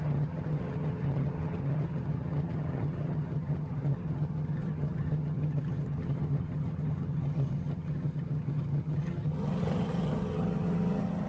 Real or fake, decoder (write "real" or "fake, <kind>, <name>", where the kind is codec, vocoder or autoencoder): fake, vocoder, HiFi-GAN